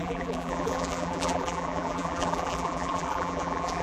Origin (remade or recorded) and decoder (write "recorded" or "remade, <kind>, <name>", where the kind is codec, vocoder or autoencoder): remade, vocoder, BigVGAN v2